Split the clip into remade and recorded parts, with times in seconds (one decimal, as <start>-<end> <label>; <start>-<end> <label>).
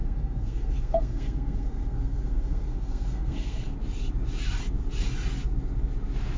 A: 0.0-3.7 remade; 3.7-6.4 recorded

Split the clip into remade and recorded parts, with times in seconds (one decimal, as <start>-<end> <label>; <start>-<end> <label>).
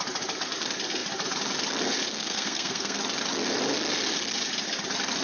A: 0.0-2.1 recorded; 2.1-3.0 remade; 3.0-5.2 recorded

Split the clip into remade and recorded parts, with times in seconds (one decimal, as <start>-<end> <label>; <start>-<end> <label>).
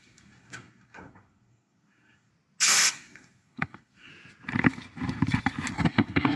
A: 0.0-2.3 remade; 2.3-2.9 recorded; 2.9-4.1 remade; 4.1-5.7 recorded; 5.7-6.4 remade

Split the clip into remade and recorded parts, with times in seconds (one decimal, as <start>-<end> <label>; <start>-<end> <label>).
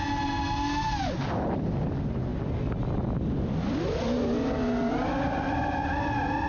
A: 0.0-6.5 recorded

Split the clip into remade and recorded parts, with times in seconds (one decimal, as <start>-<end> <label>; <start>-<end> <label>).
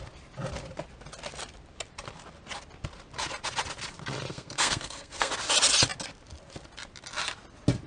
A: 0.0-4.3 recorded; 4.3-5.3 remade; 5.3-7.9 recorded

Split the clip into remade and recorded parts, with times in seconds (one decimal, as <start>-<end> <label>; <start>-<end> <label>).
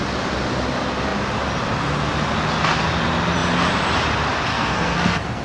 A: 0.0-4.5 recorded; 4.5-5.4 remade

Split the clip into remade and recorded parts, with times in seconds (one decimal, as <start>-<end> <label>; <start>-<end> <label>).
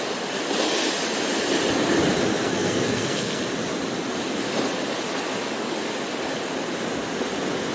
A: 0.0-2.4 recorded; 2.4-3.4 remade; 3.4-7.7 recorded